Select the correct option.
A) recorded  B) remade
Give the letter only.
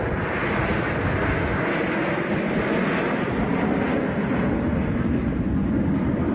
A